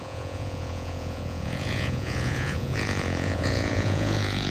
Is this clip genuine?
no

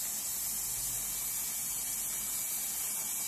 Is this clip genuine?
yes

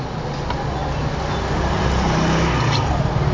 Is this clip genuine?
yes